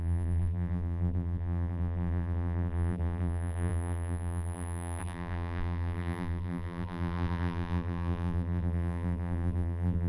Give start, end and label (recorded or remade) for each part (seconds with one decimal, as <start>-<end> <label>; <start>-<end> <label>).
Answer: 0.0-10.1 remade